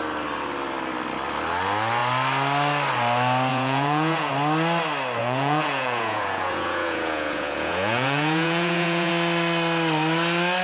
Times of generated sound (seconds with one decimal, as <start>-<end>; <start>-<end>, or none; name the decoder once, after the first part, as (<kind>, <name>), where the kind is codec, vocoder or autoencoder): 3.5-4.3 (vocoder, Vocos); 5.2-9.1